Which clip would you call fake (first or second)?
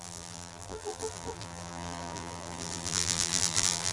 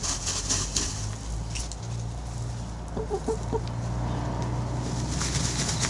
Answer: first